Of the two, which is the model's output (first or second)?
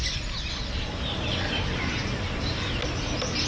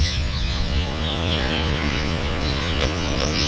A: second